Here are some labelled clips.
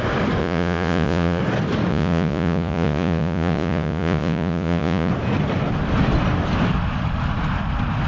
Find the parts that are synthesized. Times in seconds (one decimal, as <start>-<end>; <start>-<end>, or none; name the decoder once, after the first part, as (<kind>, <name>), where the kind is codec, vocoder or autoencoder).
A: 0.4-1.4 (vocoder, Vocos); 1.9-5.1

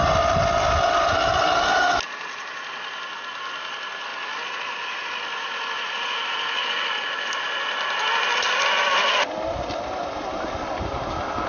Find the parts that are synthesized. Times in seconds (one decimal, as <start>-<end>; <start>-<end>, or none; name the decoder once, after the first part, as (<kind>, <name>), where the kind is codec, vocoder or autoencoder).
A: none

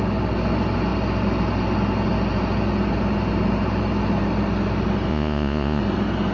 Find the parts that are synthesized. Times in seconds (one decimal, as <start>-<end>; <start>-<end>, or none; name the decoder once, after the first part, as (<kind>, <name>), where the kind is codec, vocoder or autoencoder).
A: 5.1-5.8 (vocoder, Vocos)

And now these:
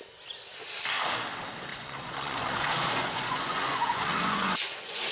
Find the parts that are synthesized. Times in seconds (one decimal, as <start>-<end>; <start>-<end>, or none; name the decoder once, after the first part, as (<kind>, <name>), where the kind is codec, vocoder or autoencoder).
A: 1.7-5.1 (vocoder, Vocos)

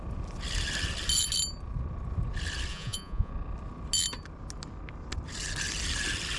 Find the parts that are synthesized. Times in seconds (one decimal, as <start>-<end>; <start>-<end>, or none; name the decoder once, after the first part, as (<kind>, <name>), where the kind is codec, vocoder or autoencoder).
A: 2.7-3.3 (vocoder, Vocos)